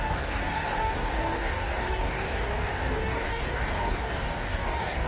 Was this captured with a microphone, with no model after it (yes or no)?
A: no